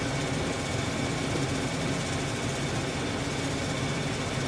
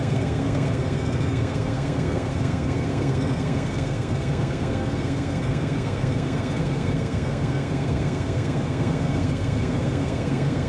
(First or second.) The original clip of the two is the first